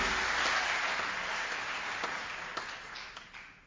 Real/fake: real